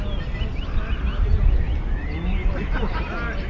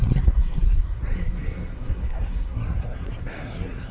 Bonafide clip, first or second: first